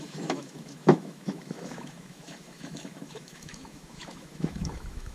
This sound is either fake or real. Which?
fake